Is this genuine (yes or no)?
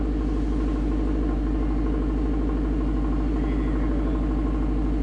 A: yes